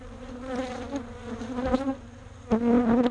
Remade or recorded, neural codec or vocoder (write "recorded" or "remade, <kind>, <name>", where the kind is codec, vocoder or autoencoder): recorded